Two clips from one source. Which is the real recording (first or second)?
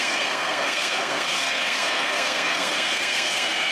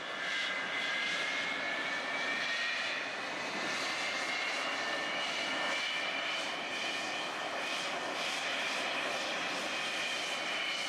second